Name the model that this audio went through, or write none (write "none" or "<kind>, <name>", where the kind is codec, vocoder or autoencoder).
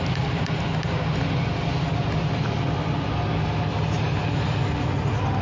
none